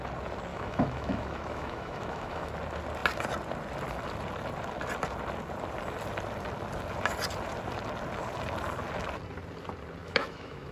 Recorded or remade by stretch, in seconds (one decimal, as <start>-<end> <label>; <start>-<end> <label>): 0.0-0.5 recorded; 0.5-2.5 remade; 2.5-10.0 recorded; 10.0-10.7 remade